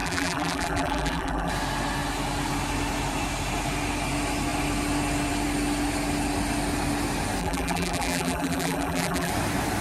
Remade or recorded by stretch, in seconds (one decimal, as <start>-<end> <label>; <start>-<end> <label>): 0.0-1.5 remade; 1.5-7.4 recorded; 7.4-9.3 remade; 9.3-9.8 recorded